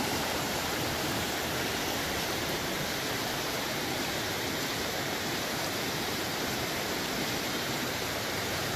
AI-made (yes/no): yes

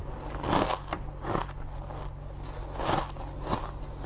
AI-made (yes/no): no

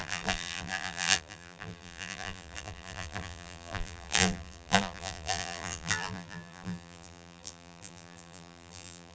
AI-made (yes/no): yes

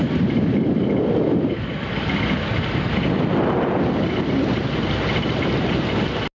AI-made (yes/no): no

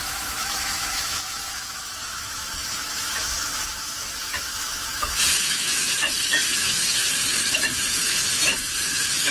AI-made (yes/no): yes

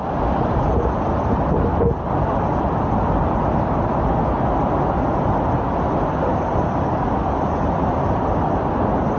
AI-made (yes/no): no